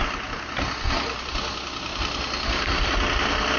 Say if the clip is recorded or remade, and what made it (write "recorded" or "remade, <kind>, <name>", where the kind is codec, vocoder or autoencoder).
recorded